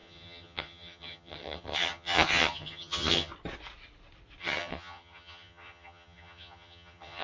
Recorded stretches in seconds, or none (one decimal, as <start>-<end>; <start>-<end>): 3.3-4.4